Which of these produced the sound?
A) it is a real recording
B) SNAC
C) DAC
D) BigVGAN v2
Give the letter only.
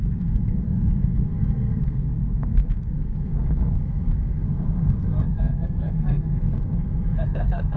B